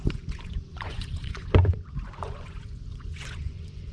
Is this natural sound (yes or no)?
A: no